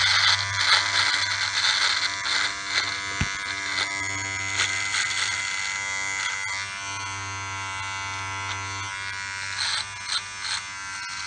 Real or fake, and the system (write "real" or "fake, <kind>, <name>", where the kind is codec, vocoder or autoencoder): real